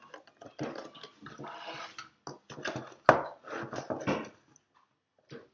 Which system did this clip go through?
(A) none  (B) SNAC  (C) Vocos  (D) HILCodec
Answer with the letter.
A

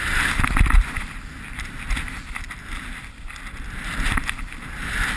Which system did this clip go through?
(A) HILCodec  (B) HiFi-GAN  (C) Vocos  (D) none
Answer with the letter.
D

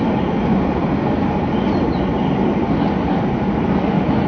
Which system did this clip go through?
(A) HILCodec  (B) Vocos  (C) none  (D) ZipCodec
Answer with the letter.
C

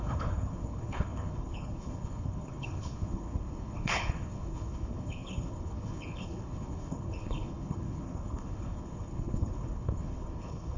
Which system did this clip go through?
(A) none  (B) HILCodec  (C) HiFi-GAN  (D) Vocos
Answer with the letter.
B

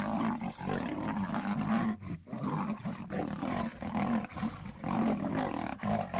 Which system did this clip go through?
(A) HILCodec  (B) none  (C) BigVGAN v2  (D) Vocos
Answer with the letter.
B